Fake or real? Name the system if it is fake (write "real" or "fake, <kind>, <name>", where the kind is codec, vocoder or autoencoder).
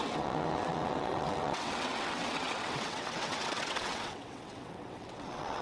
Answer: fake, vocoder, WaveNeXt